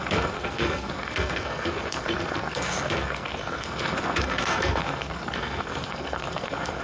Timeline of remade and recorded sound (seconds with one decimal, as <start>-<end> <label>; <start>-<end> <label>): 0.0-6.8 remade